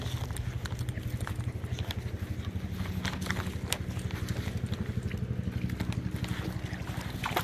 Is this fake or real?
real